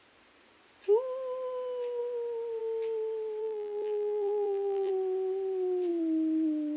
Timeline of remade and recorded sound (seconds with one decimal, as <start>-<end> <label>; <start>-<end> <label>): 0.0-3.4 recorded; 3.4-4.9 remade; 4.9-6.8 recorded